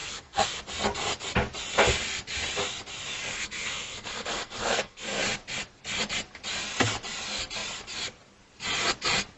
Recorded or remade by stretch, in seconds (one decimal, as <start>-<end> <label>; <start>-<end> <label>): 0.0-0.6 remade; 0.6-3.3 recorded; 3.3-5.2 remade; 5.2-9.4 recorded